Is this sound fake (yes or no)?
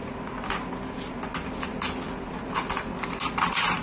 no